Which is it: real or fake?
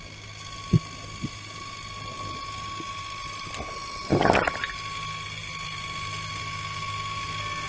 real